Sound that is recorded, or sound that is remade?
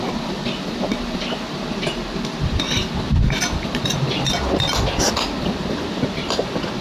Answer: recorded